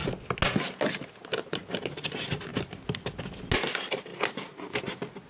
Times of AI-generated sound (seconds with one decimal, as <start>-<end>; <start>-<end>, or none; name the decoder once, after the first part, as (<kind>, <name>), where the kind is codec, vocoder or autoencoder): none